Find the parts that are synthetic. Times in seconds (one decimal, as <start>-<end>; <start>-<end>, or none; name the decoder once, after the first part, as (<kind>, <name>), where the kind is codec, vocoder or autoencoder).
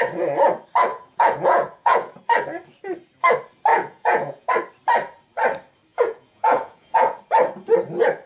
0.9-2.2 (vocoder, Vocos); 3.7-4.5; 5.9-7.2